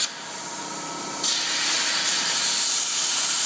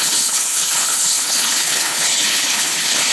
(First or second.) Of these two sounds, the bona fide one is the first